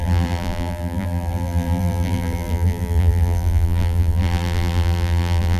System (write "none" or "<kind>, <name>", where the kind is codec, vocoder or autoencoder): vocoder, BigVGAN v2